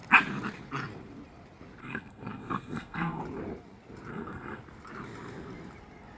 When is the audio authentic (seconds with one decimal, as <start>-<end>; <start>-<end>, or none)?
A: 0.0-1.8; 3.2-4.1; 4.6-6.2